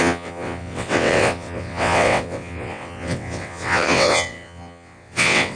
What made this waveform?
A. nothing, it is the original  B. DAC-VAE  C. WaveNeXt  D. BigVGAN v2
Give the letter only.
C